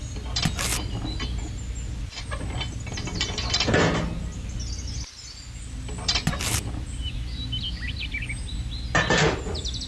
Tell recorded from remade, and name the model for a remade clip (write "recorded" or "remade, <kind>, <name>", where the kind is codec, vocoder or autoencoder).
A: recorded